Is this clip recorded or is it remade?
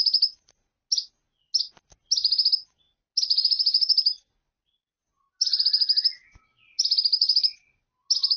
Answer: recorded